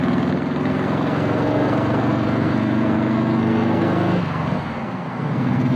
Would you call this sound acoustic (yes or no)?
no